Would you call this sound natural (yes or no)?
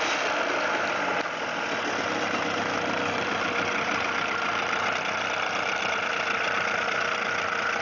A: yes